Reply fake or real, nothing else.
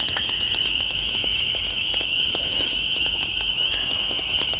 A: fake